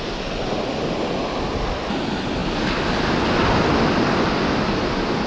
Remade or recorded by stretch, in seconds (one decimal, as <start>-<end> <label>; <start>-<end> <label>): 0.0-5.3 recorded

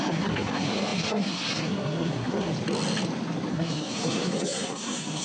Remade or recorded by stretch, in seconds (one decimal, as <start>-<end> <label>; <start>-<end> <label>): 0.0-2.5 remade; 2.5-3.5 recorded; 3.5-5.2 remade